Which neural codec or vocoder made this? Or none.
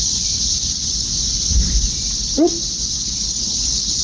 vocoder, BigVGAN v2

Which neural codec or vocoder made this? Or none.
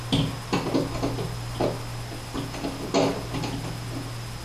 none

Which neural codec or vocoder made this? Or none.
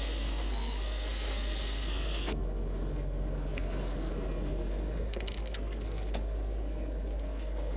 codec, SNAC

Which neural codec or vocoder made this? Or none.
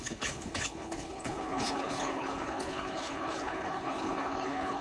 codec, HILCodec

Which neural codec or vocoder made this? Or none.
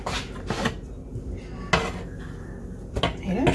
none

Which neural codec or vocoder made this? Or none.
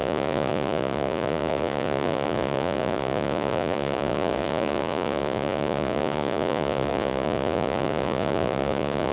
vocoder, Vocos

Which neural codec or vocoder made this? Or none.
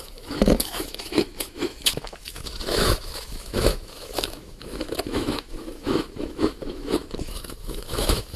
autoencoder, DAC-VAE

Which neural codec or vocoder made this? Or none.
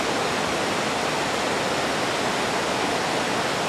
none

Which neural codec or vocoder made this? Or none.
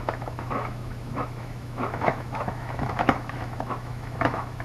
autoencoder, DAC-VAE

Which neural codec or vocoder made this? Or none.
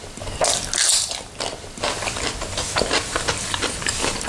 none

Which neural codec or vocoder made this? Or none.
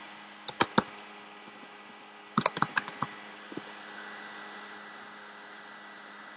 none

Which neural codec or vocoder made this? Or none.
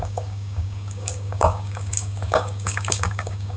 codec, DAC